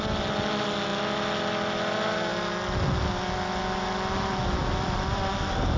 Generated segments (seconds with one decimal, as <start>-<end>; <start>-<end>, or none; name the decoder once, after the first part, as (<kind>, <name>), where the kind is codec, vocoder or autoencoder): 4.6-5.3 (vocoder, BigVGAN v2)